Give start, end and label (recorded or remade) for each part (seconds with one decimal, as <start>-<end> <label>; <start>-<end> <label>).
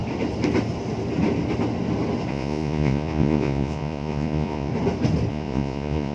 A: 0.0-2.3 recorded; 2.3-4.7 remade; 4.7-5.3 recorded; 5.3-6.1 remade